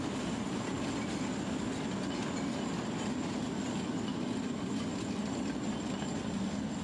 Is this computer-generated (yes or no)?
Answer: no